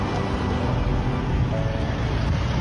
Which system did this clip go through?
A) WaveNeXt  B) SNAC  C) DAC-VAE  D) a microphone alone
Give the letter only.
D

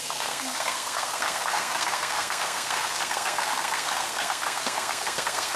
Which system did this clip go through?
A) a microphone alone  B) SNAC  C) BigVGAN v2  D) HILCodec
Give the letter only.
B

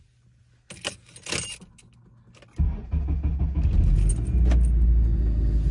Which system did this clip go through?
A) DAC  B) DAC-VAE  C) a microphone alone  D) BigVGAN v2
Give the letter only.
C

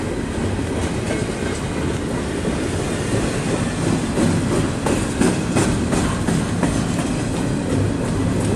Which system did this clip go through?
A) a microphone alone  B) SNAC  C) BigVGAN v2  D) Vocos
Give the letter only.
A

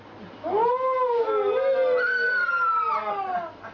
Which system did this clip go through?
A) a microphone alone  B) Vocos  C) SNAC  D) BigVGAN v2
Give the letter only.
A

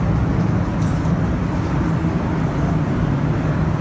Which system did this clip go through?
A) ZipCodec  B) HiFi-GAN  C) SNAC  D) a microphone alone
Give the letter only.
D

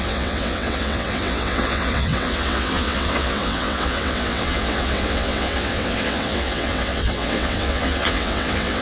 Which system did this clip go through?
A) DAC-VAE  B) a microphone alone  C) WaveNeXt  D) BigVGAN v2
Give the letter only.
C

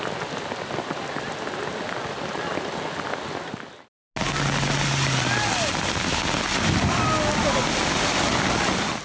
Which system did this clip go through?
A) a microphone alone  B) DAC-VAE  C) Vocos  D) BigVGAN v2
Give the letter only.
A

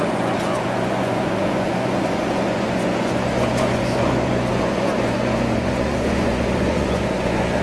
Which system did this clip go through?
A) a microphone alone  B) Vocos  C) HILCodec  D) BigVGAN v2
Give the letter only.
B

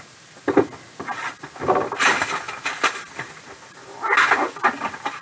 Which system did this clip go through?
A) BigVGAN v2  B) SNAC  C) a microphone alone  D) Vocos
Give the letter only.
C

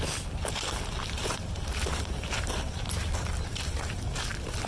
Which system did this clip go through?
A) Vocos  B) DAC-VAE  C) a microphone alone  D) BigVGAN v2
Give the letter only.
D